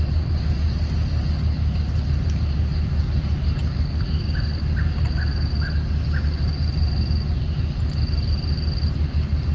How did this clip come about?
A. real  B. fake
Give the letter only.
A